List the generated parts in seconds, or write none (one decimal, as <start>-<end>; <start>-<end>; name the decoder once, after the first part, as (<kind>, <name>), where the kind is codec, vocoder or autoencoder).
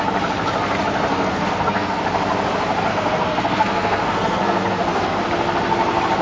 1.1-2.0 (codec, SNAC); 2.9-5.2